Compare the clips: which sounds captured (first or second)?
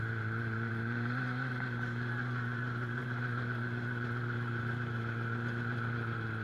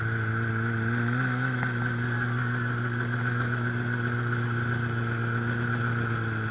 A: second